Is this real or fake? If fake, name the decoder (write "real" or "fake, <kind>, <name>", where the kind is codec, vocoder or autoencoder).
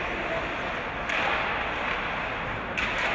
real